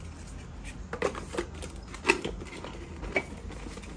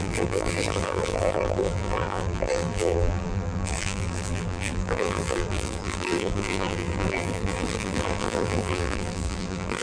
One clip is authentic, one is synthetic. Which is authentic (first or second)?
first